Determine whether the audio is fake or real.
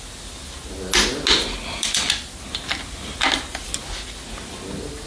real